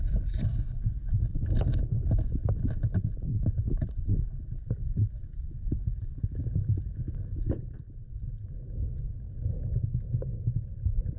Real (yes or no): yes